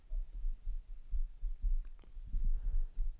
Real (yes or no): no